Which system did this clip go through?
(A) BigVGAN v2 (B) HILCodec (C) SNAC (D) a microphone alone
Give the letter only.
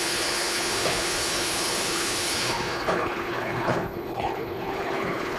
B